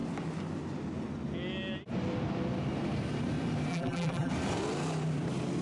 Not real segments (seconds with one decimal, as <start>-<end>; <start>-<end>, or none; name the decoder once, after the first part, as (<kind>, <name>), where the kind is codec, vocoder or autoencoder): 3.7-4.3 (vocoder, BigVGAN v2)